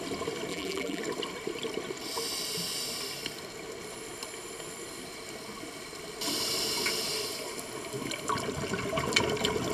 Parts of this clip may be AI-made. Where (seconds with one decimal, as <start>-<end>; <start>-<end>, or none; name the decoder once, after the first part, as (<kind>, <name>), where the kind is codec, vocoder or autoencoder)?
0.5-1.0 (vocoder, BigVGAN v2)